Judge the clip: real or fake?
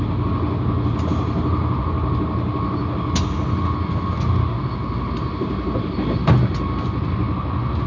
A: real